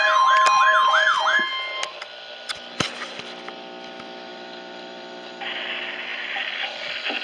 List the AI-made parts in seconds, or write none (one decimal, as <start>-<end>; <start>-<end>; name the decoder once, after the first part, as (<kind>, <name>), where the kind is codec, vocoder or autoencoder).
4.3-5.6 (vocoder, BigVGAN v2); 6.1-6.6